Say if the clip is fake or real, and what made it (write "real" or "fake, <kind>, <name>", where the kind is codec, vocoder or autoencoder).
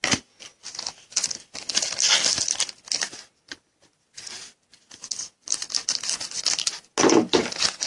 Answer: real